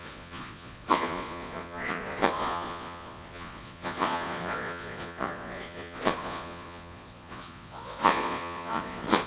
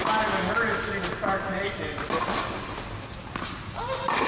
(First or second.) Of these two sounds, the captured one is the second